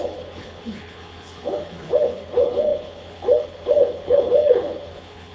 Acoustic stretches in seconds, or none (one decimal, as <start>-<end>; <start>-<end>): none